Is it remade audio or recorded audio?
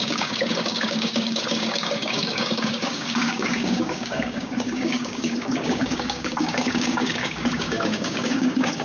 remade